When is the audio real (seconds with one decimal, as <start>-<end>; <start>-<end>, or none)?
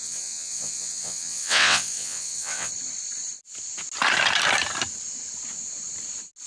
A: 2.7-6.5